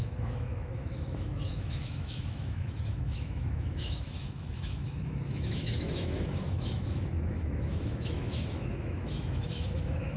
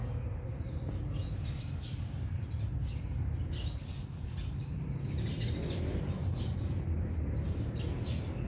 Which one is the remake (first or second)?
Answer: first